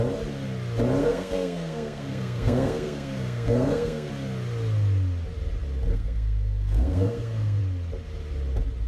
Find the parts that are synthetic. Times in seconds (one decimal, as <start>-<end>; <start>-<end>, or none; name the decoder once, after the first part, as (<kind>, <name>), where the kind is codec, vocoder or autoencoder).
1.0-4.1 (codec, SNAC); 5.9-7.6